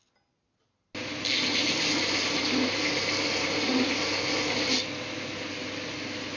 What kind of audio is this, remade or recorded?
recorded